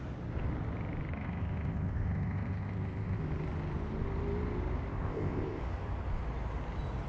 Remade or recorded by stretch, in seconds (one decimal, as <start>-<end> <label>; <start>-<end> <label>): 0.0-1.1 recorded; 1.1-3.2 remade; 3.2-4.9 recorded; 4.9-5.6 remade; 5.6-7.1 recorded